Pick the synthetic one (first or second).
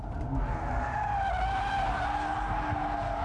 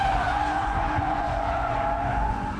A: second